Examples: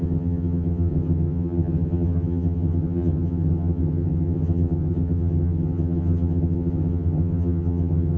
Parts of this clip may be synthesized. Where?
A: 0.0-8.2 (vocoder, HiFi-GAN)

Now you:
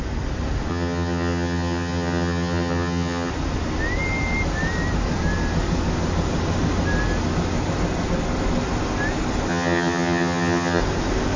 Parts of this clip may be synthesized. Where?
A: 0.7-3.3 (vocoder, HiFi-GAN); 9.5-10.8

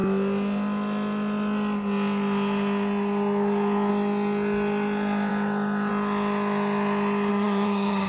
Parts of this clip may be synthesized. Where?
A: 7.3-8.1 (vocoder, HiFi-GAN)